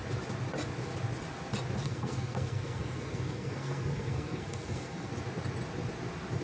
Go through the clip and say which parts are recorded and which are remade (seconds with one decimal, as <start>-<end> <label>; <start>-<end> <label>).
0.0-1.8 recorded; 1.8-5.1 remade; 5.1-6.4 recorded